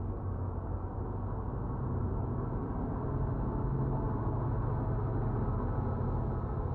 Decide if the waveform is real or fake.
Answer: real